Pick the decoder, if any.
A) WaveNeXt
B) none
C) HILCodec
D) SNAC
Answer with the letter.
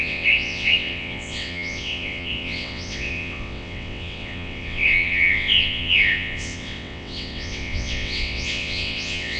A